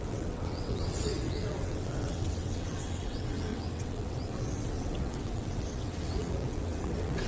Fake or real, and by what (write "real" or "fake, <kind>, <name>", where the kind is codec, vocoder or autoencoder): fake, vocoder, WaveNeXt